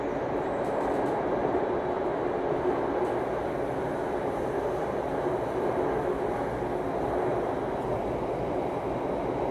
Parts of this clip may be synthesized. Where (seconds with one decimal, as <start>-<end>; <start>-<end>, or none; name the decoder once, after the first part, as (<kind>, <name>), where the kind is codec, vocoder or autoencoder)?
7.3-8.3 (vocoder, BigVGAN v2)